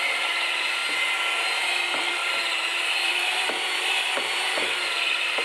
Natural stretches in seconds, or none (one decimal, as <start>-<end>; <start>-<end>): 0.8-1.6